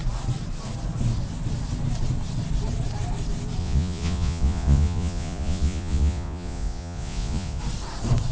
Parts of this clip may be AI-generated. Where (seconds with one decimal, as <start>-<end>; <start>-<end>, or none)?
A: 3.6-7.6